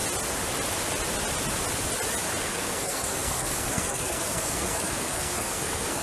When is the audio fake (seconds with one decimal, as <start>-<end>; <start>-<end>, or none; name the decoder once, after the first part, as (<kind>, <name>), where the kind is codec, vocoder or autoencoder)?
2.4-6.0 (codec, SNAC)